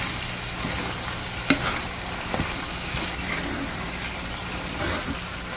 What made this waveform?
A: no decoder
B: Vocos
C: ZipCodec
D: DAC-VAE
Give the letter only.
A